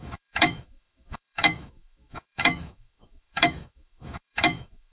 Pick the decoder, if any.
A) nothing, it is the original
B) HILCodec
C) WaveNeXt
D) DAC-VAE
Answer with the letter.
D